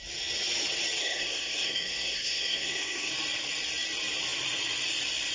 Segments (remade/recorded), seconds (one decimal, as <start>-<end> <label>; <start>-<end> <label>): 0.0-1.0 recorded; 1.0-3.1 remade; 3.1-5.3 recorded